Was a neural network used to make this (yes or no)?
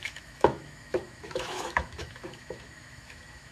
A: yes